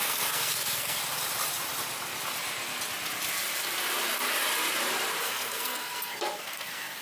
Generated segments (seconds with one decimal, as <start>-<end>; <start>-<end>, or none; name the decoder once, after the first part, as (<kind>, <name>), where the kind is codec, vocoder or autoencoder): 0.0-1.0 (codec, SNAC); 5.2-7.0

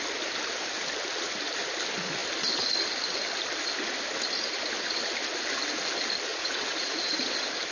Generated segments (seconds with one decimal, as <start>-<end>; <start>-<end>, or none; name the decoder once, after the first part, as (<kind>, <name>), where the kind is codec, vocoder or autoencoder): 6.3-7.3 (vocoder, Vocos)

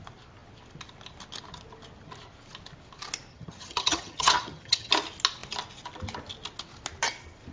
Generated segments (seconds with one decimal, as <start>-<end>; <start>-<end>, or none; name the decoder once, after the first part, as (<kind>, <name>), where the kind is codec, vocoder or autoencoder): 3.3-4.9 (vocoder, HiFi-GAN)

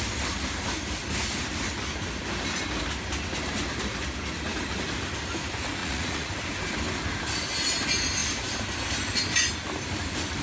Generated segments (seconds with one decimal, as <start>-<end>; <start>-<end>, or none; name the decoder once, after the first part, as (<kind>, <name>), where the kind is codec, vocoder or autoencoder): 5.8-6.3 (vocoder, Vocos)